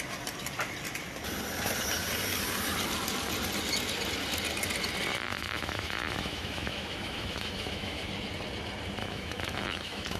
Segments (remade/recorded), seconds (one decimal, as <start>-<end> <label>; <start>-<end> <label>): 0.0-5.3 recorded; 5.3-8.1 remade; 8.1-9.0 recorded; 9.0-10.2 remade